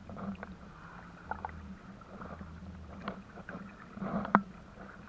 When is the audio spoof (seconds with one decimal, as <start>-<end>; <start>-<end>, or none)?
0.0-1.2; 2.6-4.5